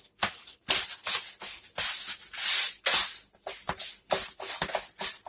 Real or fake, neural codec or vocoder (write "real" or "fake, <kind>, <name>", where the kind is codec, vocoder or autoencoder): real